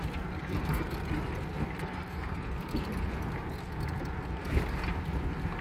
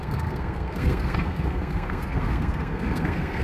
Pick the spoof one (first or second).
second